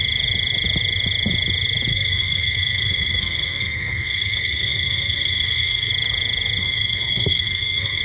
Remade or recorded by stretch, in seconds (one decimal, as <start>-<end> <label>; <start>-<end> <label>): 0.0-1.9 recorded; 1.9-5.9 remade; 5.9-6.6 recorded; 6.6-8.0 remade